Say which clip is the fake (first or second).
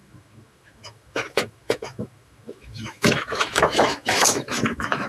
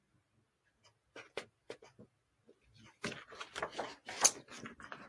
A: first